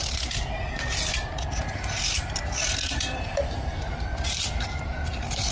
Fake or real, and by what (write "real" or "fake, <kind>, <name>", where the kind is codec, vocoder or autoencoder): real